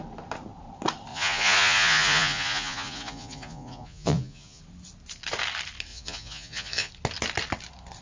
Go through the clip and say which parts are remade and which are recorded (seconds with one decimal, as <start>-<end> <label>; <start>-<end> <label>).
0.0-1.1 recorded; 1.1-4.6 remade; 4.6-5.9 recorded; 5.9-6.9 remade; 6.9-8.0 recorded

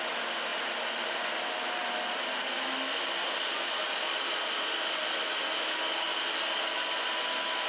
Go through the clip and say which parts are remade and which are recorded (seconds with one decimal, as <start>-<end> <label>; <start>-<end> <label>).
0.0-7.7 recorded

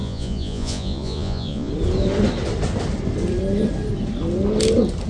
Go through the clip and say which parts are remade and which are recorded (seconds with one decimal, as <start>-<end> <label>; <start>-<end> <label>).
0.0-1.7 remade; 1.7-5.1 recorded

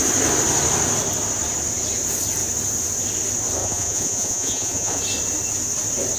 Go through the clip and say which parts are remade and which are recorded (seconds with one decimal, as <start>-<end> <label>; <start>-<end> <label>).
0.0-3.6 recorded; 3.6-5.0 remade; 5.0-6.2 recorded

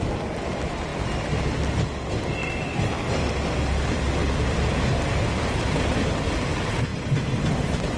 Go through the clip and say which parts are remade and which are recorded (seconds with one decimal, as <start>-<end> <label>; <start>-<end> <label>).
0.0-8.0 recorded

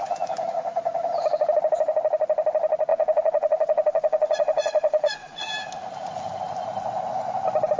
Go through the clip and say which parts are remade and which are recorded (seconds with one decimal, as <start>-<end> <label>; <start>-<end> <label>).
0.0-2.9 recorded; 2.9-5.5 remade; 5.5-7.8 recorded